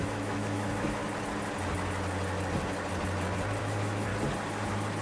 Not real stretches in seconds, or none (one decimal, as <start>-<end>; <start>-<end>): 0.0-1.0; 3.6-4.1

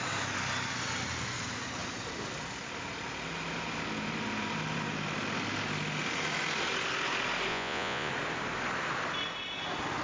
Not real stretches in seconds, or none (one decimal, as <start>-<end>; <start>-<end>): 7.5-8.1